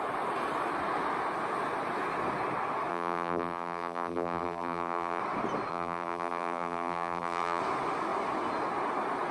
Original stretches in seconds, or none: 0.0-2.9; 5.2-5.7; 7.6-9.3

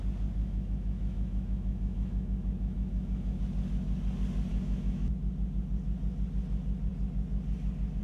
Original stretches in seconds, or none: 0.0-0.4; 3.4-4.5; 5.1-8.0

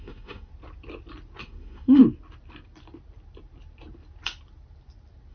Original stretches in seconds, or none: 0.5-1.4; 2.0-5.3

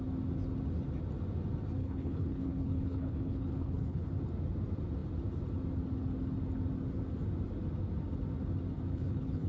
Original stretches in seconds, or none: 0.0-1.8; 4.1-8.9

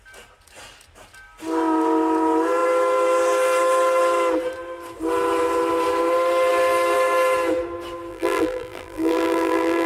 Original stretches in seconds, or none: 0.0-8.1

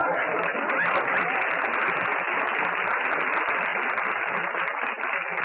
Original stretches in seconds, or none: 0.0-5.4